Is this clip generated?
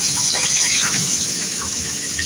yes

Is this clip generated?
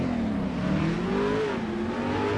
no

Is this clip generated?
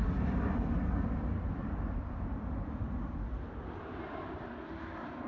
no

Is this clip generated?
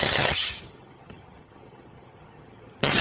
yes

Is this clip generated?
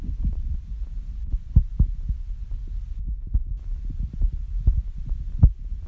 no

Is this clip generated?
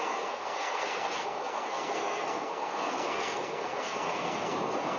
yes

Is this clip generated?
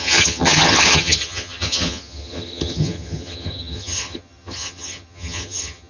yes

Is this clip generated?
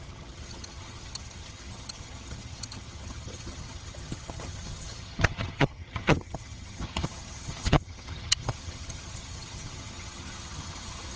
yes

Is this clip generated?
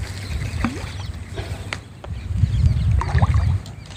no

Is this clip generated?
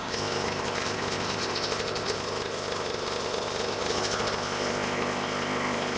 yes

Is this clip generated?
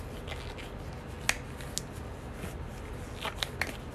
no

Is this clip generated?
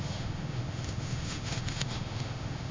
yes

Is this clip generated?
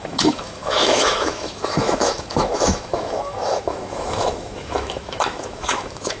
yes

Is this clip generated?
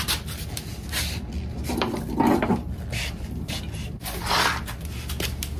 no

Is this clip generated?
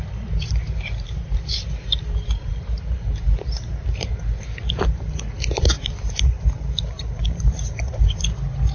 yes